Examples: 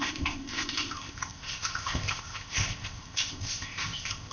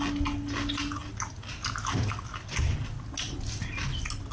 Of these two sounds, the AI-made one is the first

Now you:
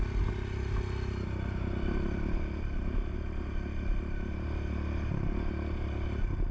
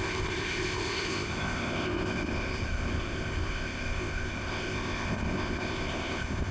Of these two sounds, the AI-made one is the second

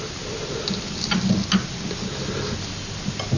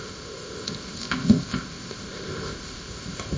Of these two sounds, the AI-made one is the second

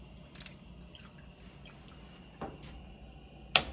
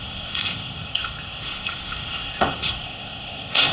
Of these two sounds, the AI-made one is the second